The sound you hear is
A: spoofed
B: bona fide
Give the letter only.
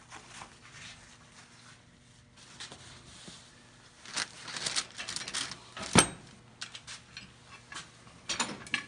B